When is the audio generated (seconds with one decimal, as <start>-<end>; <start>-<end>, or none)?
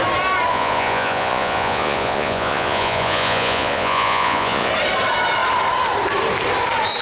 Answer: 0.5-4.7